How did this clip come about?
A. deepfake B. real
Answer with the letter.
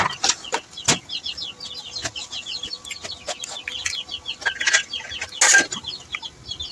B